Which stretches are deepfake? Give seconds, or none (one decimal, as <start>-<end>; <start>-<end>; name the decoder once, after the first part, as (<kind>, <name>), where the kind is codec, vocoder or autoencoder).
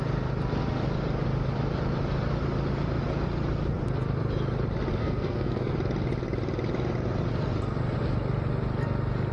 5.0-5.7 (codec, SNAC)